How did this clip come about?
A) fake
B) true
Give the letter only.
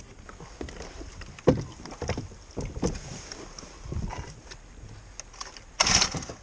B